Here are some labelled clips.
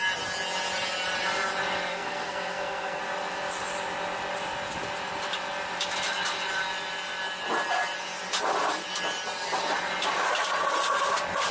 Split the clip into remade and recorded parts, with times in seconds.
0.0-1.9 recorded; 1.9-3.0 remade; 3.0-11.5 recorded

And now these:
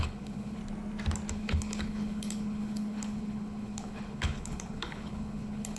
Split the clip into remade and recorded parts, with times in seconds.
0.0-0.6 remade; 0.6-1.3 recorded; 1.3-5.8 remade

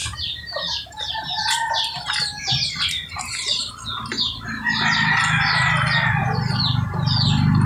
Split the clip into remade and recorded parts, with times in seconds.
0.0-3.7 remade; 3.7-7.7 recorded